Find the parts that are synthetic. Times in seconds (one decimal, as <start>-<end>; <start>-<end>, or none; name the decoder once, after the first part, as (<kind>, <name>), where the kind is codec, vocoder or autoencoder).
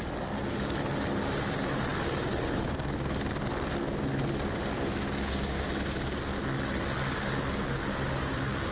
none